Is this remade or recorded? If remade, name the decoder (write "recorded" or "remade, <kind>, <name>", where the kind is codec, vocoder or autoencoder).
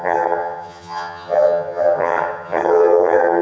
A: remade, vocoder, HiFi-GAN